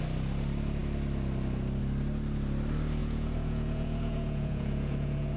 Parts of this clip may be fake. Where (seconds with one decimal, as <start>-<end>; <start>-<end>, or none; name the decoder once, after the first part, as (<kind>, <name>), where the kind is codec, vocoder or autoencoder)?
3.0-5.4 (vocoder, Vocos)